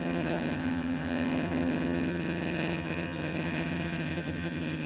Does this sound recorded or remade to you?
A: remade